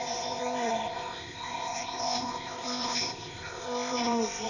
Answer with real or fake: fake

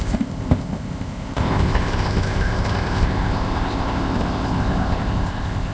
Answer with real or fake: fake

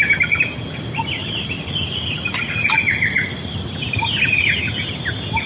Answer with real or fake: real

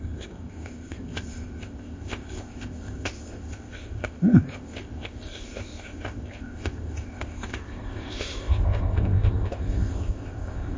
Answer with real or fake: fake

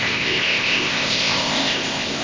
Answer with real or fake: fake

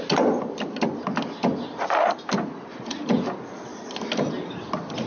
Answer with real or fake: real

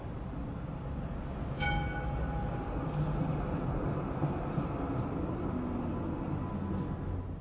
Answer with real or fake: real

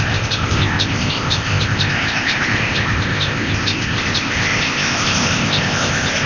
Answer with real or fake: fake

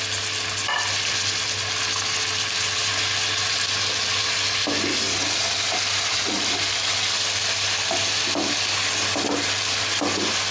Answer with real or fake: real